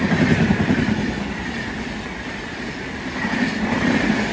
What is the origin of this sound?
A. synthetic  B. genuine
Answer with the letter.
A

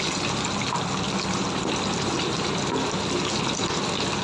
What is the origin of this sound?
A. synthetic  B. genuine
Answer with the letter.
B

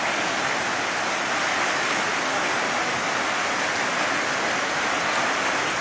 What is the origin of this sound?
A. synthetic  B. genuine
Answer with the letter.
B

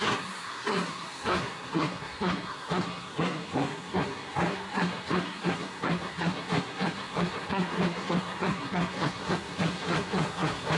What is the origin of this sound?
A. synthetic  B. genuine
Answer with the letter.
A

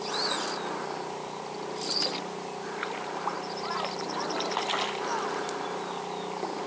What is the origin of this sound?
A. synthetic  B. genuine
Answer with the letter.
B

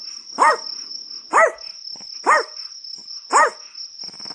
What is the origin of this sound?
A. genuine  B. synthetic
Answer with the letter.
A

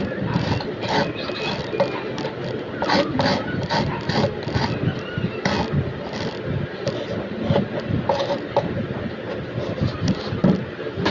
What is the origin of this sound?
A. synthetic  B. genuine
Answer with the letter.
B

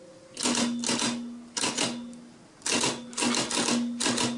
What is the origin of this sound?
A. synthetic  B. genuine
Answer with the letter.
B